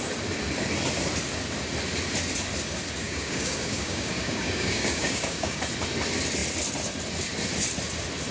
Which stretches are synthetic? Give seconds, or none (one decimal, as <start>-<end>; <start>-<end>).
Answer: 3.0-5.6